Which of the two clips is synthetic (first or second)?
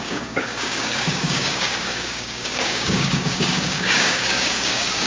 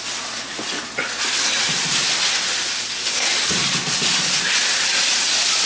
first